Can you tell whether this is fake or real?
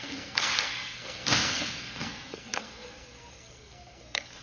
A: fake